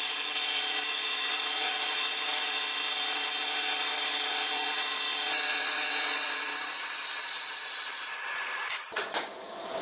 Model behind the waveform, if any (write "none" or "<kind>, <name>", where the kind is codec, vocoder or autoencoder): vocoder, Vocos